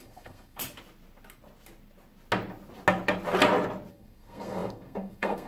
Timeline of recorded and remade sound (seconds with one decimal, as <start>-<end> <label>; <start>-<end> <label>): 0.0-0.6 remade; 0.6-3.9 recorded; 3.9-5.5 remade